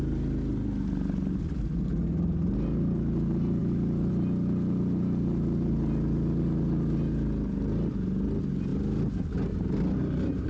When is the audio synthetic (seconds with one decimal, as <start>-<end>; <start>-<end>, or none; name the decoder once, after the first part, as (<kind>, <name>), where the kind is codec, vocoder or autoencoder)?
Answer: none